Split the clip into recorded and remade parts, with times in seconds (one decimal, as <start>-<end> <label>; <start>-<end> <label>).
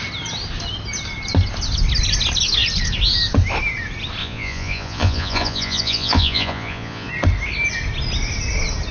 0.0-4.2 recorded; 4.2-7.1 remade; 7.1-8.9 recorded